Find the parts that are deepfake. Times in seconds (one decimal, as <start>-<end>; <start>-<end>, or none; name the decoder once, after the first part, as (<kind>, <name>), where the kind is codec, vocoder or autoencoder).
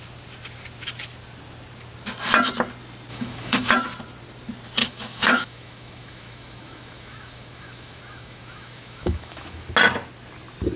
3.1-3.7 (autoencoder, DAC-VAE); 4.8-9.7